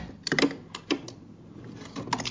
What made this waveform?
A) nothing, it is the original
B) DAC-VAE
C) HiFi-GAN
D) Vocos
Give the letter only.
A